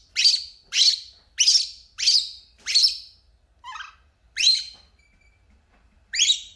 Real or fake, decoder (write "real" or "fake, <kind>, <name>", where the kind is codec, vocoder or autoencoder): real